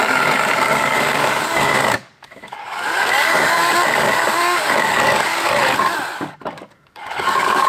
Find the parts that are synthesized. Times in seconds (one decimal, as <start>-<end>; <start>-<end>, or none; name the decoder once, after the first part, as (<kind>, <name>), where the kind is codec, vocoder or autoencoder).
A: 0.0-5.6 (codec, DAC); 6.1-7.7